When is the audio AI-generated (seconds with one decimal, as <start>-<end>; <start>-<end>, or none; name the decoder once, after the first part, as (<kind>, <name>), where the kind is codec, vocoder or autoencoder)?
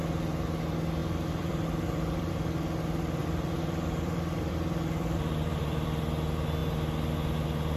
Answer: 1.0-2.3 (vocoder, BigVGAN v2); 3.2-6.0